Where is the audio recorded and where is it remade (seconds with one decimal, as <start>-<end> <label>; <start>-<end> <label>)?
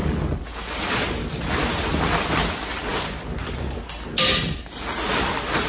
0.0-5.7 recorded